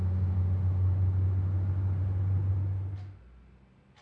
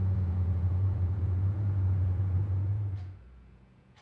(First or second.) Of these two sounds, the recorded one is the first